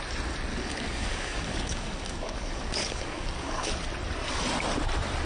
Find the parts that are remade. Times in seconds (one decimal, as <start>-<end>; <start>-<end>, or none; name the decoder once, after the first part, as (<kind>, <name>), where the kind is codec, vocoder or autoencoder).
0.5-3.7 (codec, DAC)